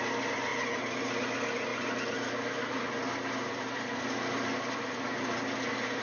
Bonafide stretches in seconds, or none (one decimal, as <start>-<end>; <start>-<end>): 0.0-6.0